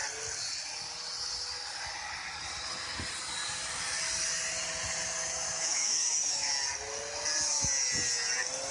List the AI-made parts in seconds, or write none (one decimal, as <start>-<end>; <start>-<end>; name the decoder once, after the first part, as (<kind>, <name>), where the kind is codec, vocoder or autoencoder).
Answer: 5.2-6.5 (autoencoder, DAC-VAE)